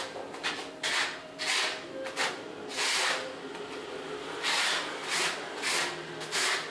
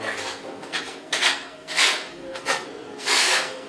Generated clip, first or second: second